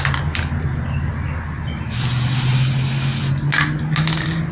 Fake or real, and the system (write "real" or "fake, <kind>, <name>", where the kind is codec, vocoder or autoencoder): real